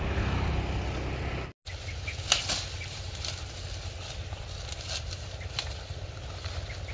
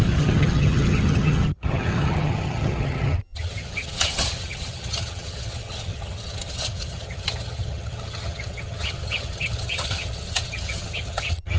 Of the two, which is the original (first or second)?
first